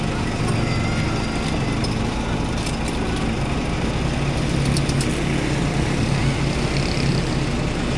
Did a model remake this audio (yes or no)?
no